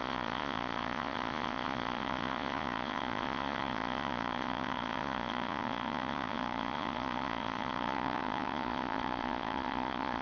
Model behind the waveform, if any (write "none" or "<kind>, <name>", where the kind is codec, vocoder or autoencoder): vocoder, Vocos